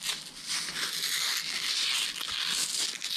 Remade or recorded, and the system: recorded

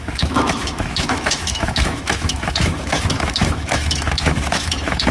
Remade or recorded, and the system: remade, autoencoder, DAC-VAE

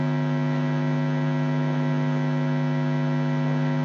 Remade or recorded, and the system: recorded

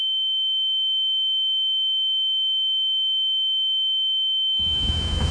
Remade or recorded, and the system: remade, autoencoder, DAC-VAE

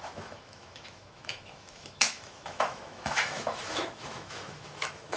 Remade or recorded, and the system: remade, autoencoder, DAC-VAE